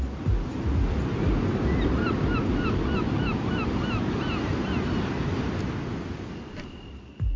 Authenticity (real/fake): real